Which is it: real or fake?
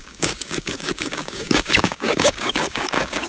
fake